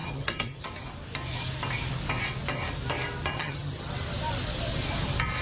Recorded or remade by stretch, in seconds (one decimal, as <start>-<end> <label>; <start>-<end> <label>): 0.0-0.7 remade; 0.7-3.3 recorded; 3.3-3.9 remade; 3.9-5.4 recorded